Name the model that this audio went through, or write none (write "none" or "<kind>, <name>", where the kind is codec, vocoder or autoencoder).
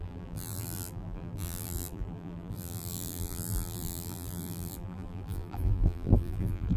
vocoder, BigVGAN v2